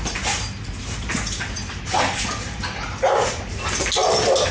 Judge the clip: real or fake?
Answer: real